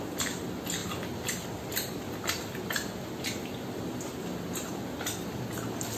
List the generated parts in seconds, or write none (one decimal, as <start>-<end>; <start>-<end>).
none